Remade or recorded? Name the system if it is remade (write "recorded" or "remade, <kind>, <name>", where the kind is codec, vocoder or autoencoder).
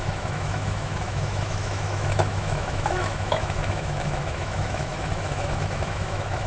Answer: remade, autoencoder, DAC-VAE